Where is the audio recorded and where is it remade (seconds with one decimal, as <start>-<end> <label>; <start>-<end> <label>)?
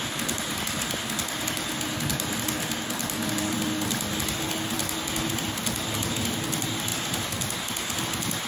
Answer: 0.0-8.5 recorded